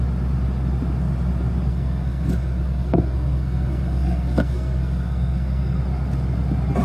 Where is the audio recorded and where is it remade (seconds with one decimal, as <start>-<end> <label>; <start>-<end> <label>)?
0.0-1.7 recorded; 1.7-5.8 remade; 5.8-6.8 recorded